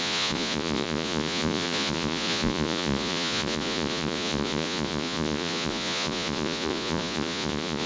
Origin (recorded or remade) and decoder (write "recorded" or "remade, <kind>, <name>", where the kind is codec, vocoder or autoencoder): remade, vocoder, Vocos